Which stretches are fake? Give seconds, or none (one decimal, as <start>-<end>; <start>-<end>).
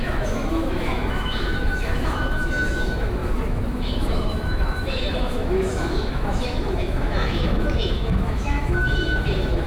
0.0-9.7